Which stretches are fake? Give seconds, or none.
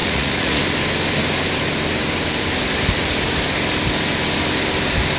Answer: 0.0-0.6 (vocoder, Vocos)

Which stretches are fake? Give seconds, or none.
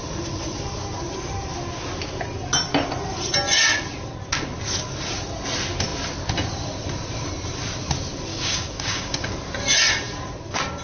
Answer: 8.3-9.3 (codec, DAC)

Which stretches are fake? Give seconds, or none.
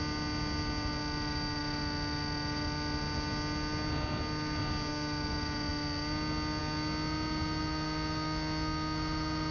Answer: none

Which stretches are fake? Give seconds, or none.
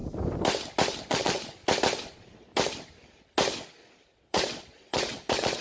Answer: 1.1-1.6 (vocoder, Vocos); 2.1-2.5; 4.1-5.6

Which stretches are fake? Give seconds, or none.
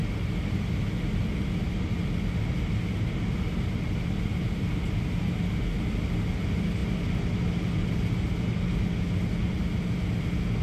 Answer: none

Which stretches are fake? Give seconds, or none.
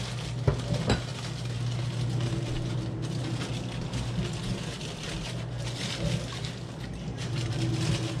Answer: none